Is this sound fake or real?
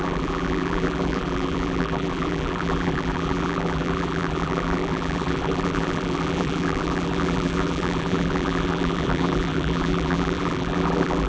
fake